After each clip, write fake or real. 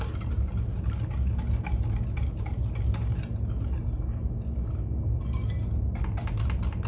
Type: real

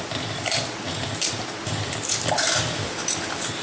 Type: fake